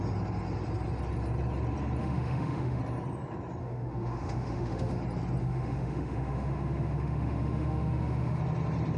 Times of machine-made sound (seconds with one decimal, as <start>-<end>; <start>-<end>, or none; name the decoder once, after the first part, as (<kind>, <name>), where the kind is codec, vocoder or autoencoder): 2.0-2.8 (autoencoder, DAC-VAE); 3.6-5.0; 5.4-8.4